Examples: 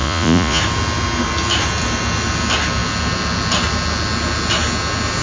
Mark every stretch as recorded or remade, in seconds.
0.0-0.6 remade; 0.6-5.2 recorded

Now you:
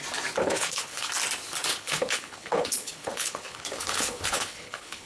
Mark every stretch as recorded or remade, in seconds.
0.0-0.4 recorded; 0.4-1.1 remade; 1.1-1.7 recorded; 1.7-5.1 remade

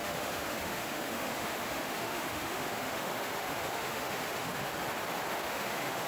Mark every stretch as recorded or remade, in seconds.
0.0-4.7 remade; 4.7-5.3 recorded; 5.3-6.1 remade

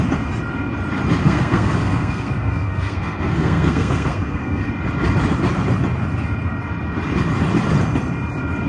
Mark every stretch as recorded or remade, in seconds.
0.0-1.2 recorded; 1.2-4.7 remade; 4.7-8.7 recorded

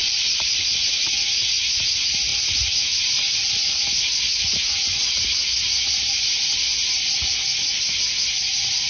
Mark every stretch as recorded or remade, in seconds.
0.0-1.1 remade; 1.1-8.9 recorded

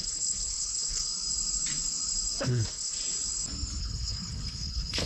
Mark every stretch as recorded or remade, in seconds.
0.0-1.1 remade; 1.1-2.4 recorded; 2.4-3.0 remade; 3.0-3.8 recorded; 3.8-5.1 remade